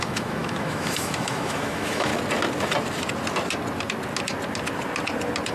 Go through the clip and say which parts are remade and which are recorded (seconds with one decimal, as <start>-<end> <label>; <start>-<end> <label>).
0.0-2.1 remade; 2.1-5.5 recorded